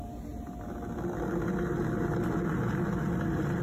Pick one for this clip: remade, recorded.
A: recorded